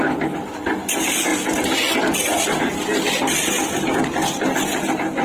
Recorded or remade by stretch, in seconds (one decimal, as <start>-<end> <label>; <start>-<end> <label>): 0.0-5.2 recorded